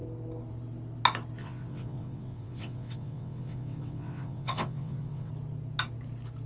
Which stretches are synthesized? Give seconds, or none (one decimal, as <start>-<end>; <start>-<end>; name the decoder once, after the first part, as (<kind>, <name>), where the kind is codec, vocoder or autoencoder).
1.4-5.3 (vocoder, WaveNeXt)